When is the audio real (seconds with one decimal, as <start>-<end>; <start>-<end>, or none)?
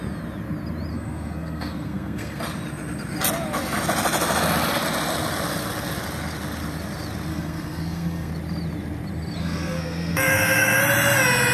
0.0-0.9; 2.4-7.3; 8.3-9.4; 10.8-11.5